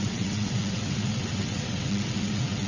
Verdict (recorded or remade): remade